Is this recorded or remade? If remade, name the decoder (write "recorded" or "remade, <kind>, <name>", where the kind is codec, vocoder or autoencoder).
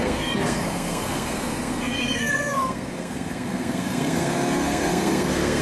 remade, codec, SNAC